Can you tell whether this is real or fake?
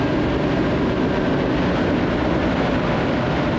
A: real